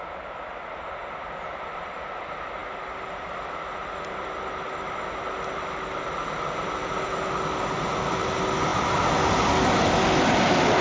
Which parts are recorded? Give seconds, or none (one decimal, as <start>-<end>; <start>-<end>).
0.0-10.8